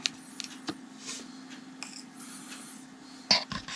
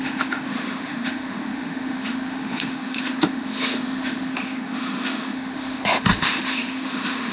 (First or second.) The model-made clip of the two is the second